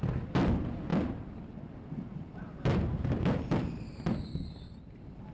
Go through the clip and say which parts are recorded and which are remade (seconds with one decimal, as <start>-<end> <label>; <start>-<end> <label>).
0.0-5.3 recorded